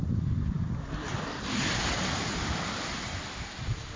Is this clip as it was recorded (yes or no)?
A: yes